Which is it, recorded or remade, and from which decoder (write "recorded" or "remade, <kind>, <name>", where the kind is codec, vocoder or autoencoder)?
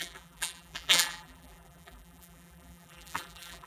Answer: remade, vocoder, BigVGAN v2